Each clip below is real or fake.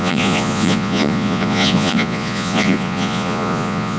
fake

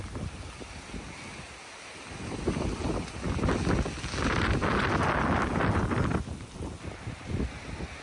real